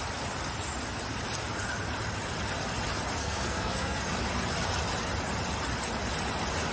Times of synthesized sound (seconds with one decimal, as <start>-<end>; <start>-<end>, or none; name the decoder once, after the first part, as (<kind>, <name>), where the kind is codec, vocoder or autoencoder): 3.2-4.0 (codec, SNAC)